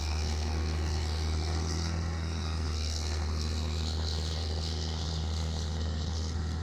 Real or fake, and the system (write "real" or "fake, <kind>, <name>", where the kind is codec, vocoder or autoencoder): fake, codec, SNAC